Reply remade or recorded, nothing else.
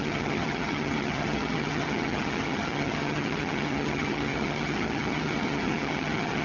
remade